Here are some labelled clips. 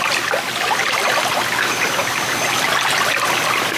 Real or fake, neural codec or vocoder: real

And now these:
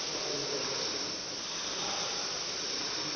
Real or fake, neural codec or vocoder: real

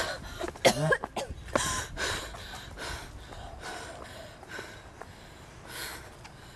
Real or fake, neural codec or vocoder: real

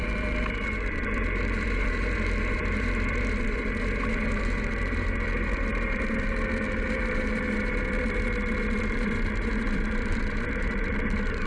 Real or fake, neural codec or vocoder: fake, vocoder, BigVGAN v2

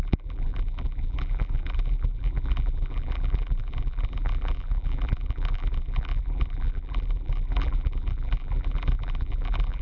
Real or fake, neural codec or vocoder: fake, vocoder, BigVGAN v2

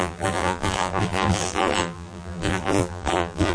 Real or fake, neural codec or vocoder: fake, vocoder, BigVGAN v2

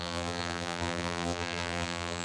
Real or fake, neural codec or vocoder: fake, vocoder, BigVGAN v2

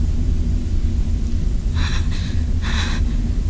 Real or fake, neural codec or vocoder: real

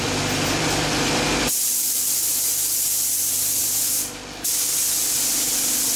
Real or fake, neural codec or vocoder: fake, vocoder, BigVGAN v2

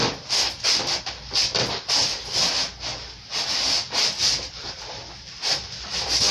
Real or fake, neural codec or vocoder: real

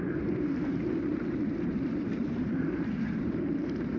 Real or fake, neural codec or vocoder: fake, vocoder, BigVGAN v2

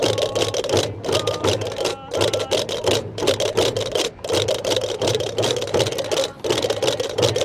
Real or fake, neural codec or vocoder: real